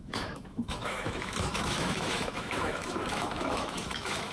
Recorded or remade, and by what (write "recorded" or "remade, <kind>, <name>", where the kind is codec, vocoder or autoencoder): remade, autoencoder, DAC-VAE